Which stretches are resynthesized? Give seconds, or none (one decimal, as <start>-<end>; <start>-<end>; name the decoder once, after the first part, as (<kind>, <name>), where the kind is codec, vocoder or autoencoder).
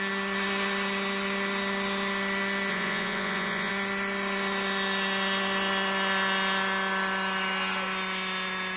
2.7-3.7 (vocoder, Vocos)